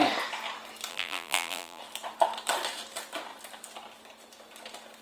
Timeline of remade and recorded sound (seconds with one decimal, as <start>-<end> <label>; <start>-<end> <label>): 0.0-0.9 recorded; 0.9-1.8 remade; 1.8-5.0 recorded